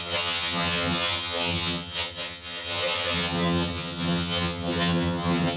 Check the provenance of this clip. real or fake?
fake